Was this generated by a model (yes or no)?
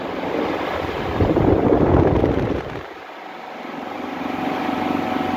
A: no